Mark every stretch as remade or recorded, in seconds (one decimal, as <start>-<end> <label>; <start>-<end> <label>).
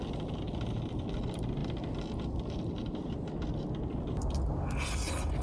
0.0-5.4 recorded